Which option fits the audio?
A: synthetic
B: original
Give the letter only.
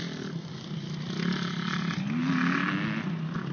B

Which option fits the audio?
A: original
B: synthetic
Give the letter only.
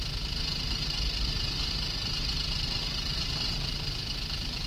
A